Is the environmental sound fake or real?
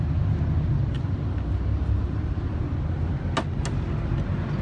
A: real